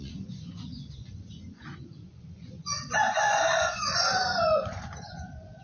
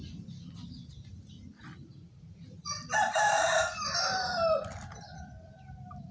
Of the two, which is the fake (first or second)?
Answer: first